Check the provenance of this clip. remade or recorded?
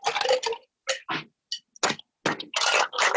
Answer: recorded